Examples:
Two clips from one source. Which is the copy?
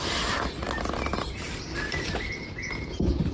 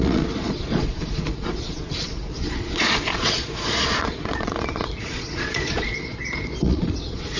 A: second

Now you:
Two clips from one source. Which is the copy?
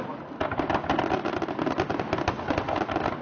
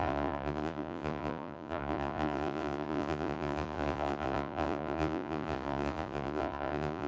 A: second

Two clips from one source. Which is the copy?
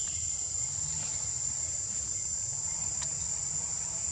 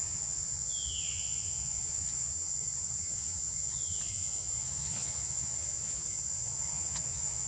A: second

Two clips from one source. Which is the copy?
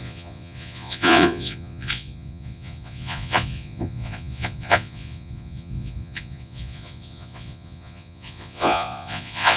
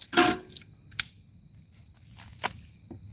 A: first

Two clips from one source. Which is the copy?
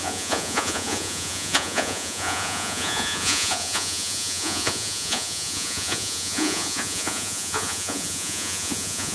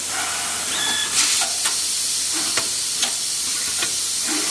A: first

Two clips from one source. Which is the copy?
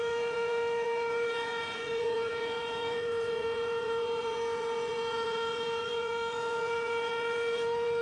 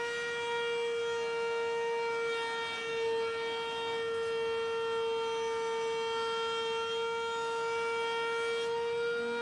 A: first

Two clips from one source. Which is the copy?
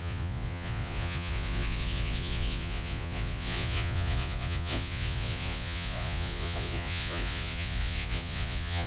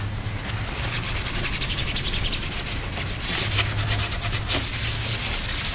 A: first